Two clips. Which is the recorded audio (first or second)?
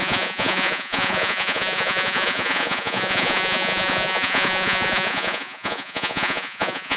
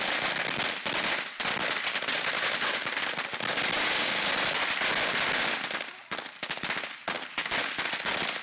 second